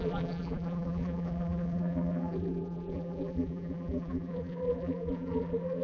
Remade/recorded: remade